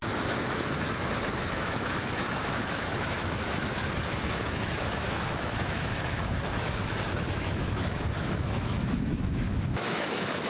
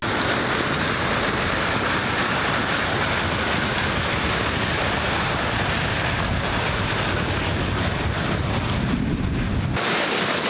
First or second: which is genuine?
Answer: second